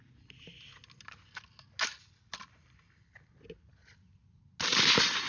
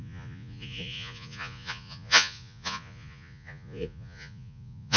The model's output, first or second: second